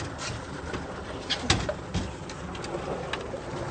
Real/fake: real